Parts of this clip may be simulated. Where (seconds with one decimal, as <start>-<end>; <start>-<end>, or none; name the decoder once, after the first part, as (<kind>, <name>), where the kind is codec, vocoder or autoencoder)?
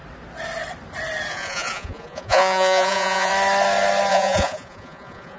1.3-3.3 (vocoder, Vocos); 4.1-5.4